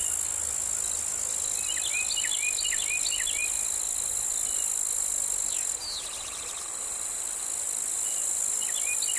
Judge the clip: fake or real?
real